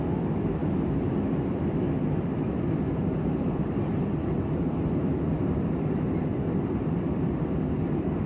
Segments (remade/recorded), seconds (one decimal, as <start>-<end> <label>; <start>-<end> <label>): 0.0-8.3 recorded